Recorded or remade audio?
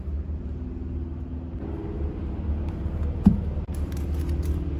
recorded